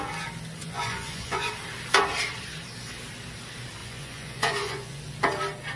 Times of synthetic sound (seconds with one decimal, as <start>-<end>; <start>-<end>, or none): 0.6-1.5; 3.8-5.0